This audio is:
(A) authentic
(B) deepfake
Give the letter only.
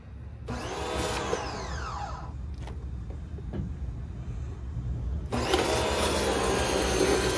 A